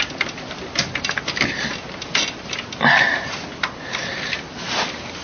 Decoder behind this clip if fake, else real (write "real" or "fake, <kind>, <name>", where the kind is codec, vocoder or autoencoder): real